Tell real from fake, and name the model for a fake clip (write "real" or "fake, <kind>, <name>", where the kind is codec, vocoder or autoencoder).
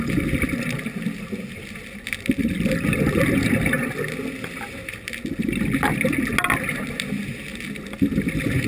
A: real